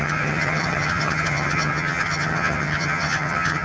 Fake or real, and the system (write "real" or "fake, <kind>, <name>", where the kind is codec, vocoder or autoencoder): fake, vocoder, HiFi-GAN